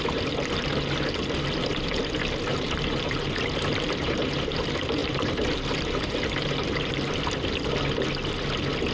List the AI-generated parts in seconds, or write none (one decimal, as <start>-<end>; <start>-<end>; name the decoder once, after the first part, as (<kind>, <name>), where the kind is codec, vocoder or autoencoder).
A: 2.5-4.2 (vocoder, BigVGAN v2); 5.0-7.2